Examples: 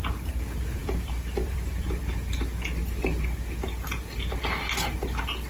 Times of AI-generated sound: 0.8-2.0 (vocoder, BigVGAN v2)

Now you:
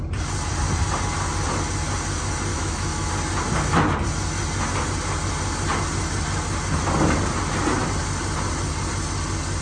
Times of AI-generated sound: 2.5-3.1 (autoencoder, DAC-VAE)

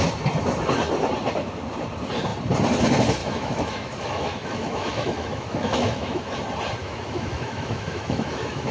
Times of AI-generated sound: 3.2-6.3 (autoencoder, DAC-VAE); 6.8-8.7

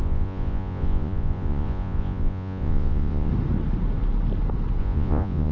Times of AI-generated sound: 0.0-3.3 (vocoder, Vocos); 4.8-5.5